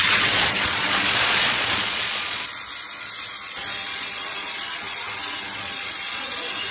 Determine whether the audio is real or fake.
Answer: fake